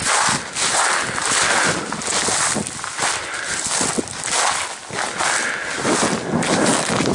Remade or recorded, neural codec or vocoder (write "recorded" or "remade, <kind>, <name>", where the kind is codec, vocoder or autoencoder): recorded